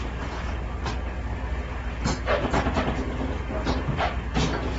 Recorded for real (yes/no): yes